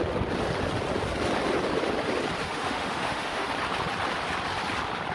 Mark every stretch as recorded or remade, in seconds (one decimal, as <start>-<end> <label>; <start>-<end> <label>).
0.0-2.4 recorded; 2.4-3.5 remade; 3.5-5.1 recorded